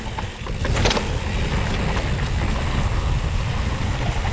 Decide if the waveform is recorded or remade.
recorded